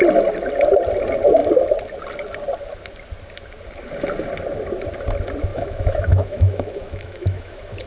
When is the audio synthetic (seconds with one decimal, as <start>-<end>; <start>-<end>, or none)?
5.5-7.9